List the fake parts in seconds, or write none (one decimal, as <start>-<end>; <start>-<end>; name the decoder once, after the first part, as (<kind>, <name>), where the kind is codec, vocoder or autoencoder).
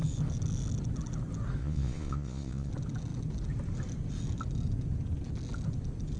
1.6-2.7 (vocoder, Vocos)